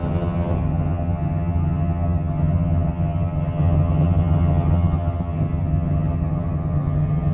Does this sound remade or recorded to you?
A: remade